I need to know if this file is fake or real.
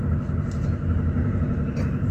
real